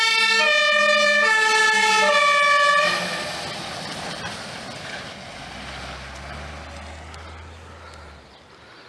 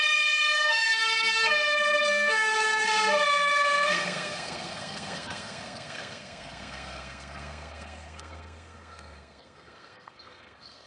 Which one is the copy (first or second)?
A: second